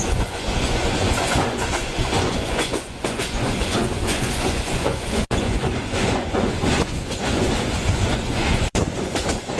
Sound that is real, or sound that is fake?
fake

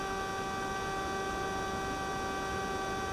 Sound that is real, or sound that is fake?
real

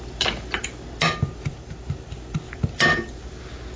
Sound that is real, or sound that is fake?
real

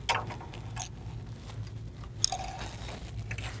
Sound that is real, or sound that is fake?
real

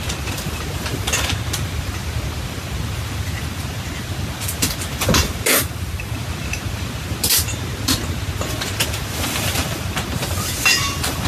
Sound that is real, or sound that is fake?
real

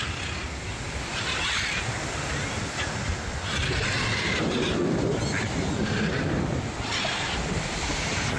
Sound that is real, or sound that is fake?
real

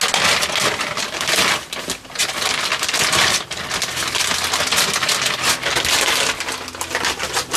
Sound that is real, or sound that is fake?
real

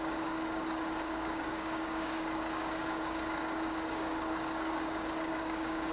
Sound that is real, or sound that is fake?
fake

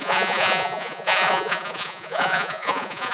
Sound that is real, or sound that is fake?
fake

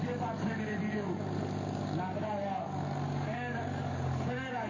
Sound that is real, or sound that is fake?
fake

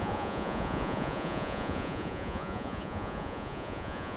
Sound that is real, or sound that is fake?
fake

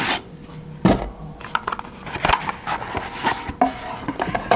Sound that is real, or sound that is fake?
real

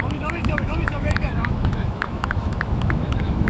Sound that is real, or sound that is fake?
fake